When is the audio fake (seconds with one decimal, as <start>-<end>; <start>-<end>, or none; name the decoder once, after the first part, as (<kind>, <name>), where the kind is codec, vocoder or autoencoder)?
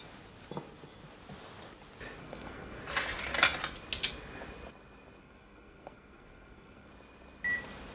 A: 2.2-2.8 (codec, SNAC); 5.2-6.9